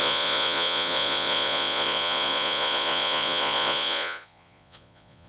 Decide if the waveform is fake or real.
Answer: fake